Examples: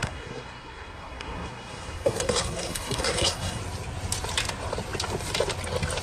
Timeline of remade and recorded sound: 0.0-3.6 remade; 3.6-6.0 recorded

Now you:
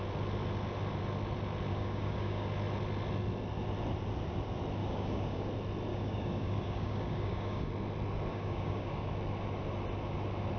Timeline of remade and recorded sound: 0.0-1.7 recorded; 1.7-2.5 remade; 2.5-4.8 recorded; 4.8-5.5 remade; 5.5-5.9 recorded; 5.9-7.7 remade; 7.7-8.3 recorded; 8.3-9.1 remade; 9.1-10.6 recorded

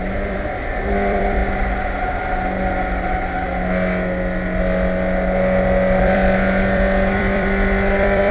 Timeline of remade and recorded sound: 0.0-1.4 remade; 1.4-6.0 recorded; 6.0-8.3 remade

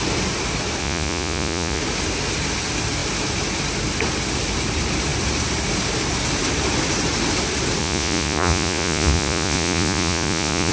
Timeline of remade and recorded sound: 0.0-0.8 recorded; 0.8-1.8 remade; 1.8-7.8 recorded; 7.8-10.7 remade

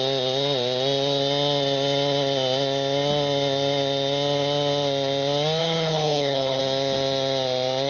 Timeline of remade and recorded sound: 0.0-5.6 recorded; 5.6-6.6 remade; 6.6-7.9 recorded

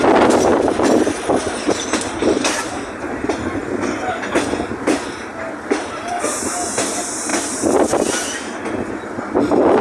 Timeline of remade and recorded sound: 0.0-0.5 recorded; 0.5-3.2 remade; 3.2-7.3 recorded; 7.3-8.1 remade; 8.1-9.8 recorded

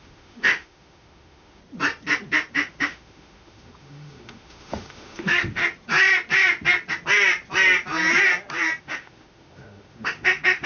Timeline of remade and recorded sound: 0.0-1.6 remade; 1.6-2.5 recorded; 2.5-5.6 remade; 5.6-8.8 recorded; 8.8-10.7 remade